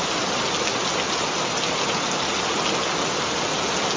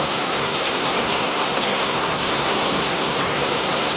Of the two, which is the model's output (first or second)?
second